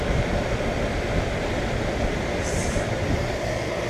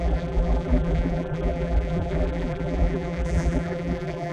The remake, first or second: second